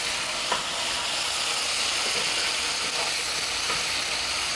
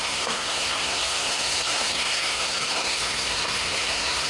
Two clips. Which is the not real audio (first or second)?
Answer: second